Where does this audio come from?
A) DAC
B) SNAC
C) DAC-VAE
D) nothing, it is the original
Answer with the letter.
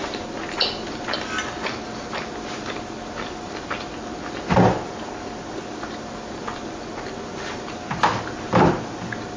D